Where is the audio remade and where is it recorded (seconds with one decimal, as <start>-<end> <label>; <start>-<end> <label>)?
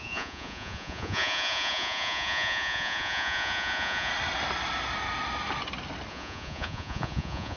0.0-4.1 remade; 4.1-6.1 recorded; 6.1-7.6 remade